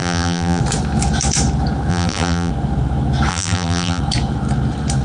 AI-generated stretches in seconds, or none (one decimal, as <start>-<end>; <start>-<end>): 0.0-0.6; 1.9-2.5; 3.3-4.0